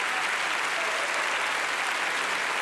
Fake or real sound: real